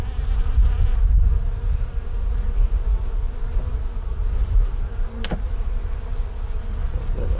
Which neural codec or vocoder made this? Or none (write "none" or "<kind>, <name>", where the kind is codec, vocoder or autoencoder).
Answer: none